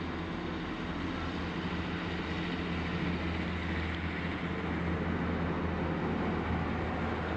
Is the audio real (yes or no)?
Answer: yes